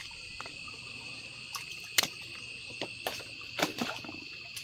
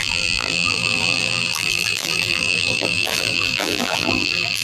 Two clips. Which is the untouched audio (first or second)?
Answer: first